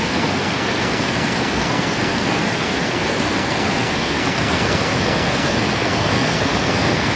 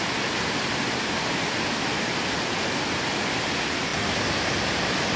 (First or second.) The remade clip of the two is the first